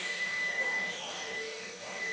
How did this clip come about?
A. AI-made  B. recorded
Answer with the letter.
A